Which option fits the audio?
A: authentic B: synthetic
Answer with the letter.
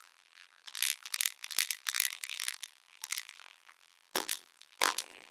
B